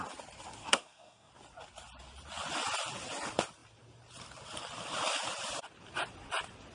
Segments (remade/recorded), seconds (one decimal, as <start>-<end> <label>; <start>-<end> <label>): 0.0-0.6 recorded; 0.6-1.3 remade; 1.3-6.7 recorded

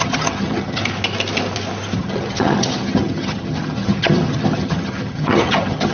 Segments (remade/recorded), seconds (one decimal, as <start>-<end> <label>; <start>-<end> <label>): 0.0-0.8 remade; 0.8-2.0 recorded; 2.0-5.9 remade

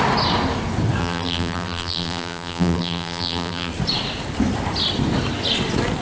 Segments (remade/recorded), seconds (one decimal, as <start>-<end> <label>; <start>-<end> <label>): 0.0-1.0 recorded; 1.0-3.7 remade; 3.7-6.0 recorded